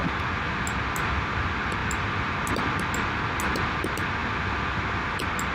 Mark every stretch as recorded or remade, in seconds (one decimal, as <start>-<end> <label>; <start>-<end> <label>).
0.0-5.5 recorded